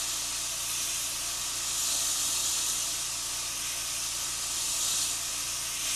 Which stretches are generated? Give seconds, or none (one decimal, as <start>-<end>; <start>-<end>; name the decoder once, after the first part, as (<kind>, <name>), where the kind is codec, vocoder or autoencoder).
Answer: 1.4-1.9 (vocoder, BigVGAN v2); 2.4-5.3